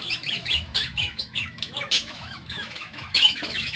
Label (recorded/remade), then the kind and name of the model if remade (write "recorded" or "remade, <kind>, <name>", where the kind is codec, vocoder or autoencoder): remade, autoencoder, DAC-VAE